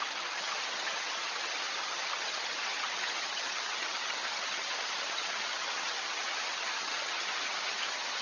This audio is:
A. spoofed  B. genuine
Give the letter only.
A